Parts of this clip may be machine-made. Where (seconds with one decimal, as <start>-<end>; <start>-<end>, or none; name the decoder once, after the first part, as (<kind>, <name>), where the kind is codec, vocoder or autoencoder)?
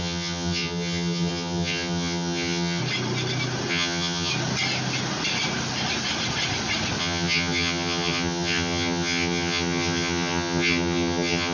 0.0-2.8 (vocoder, HiFi-GAN); 3.7-4.3; 7.0-11.5